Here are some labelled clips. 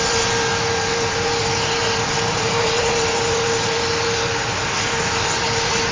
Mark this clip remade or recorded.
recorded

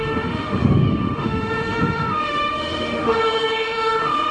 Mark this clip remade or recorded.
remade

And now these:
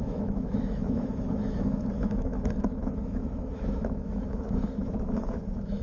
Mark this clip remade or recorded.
remade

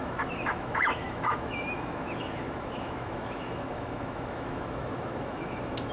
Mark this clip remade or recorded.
remade